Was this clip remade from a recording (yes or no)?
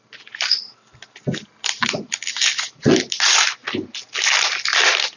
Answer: no